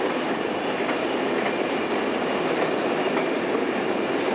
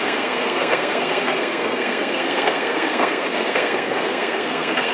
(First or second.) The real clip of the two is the first